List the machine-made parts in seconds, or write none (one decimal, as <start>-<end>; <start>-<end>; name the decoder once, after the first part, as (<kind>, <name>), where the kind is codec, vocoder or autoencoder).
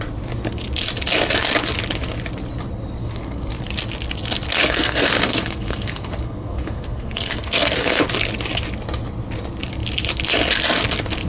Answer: 3.0-3.6 (codec, SNAC); 4.6-8.0